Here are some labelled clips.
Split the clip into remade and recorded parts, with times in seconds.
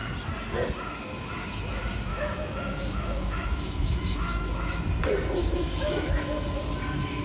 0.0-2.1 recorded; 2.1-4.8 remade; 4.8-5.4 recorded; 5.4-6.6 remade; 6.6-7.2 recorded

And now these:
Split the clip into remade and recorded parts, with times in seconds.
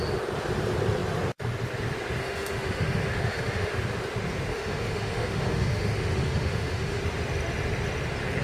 0.0-2.2 recorded; 2.2-3.7 remade; 3.7-4.5 recorded; 4.5-7.0 remade; 7.0-8.4 recorded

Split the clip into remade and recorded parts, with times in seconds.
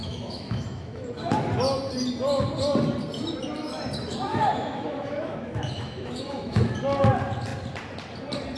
0.0-1.5 remade; 1.5-4.3 recorded; 4.3-6.7 remade; 6.7-8.6 recorded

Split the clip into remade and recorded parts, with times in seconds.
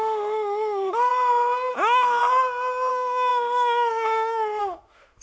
0.0-1.1 remade; 1.1-1.7 recorded; 1.7-2.2 remade; 2.2-2.9 recorded; 2.9-5.2 remade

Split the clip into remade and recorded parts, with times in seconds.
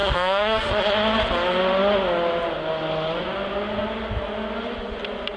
0.0-0.7 remade; 0.7-5.4 recorded